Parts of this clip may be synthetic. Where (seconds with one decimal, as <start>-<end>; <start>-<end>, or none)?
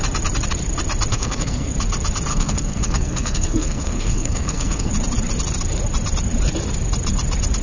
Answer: 1.1-1.7; 2.3-4.9